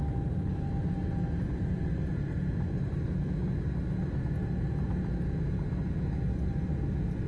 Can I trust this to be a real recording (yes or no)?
yes